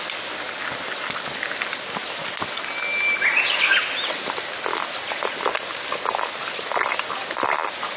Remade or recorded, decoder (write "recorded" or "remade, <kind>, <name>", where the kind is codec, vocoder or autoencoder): recorded